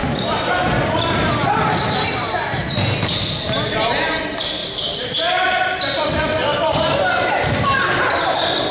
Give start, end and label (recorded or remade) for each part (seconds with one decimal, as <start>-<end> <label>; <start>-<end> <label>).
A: 0.0-2.6 remade; 2.6-4.6 recorded; 4.6-6.1 remade; 6.1-8.7 recorded